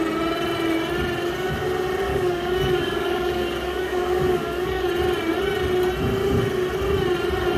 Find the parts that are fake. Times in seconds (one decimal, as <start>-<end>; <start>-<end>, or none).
2.1-4.9